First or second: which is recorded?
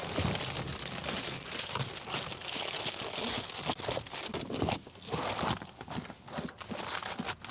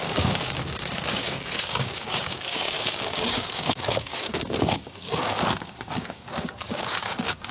first